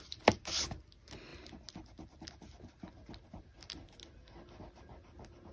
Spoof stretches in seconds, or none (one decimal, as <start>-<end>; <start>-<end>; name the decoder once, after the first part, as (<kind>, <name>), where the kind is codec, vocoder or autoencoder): none